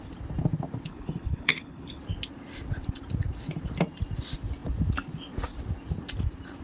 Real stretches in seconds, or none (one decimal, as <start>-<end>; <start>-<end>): 0.0-0.9; 2.0-6.6